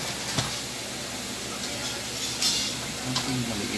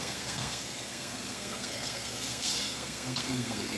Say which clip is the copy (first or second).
second